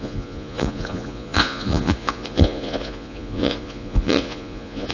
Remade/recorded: remade